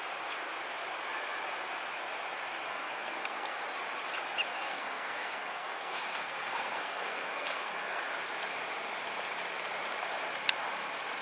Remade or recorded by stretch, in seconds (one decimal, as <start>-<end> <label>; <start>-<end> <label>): 0.0-2.7 recorded; 2.7-3.6 remade; 3.6-4.5 recorded; 4.5-8.0 remade; 8.0-11.2 recorded